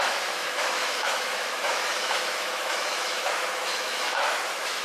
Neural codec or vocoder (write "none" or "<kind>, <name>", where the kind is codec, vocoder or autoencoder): autoencoder, DAC-VAE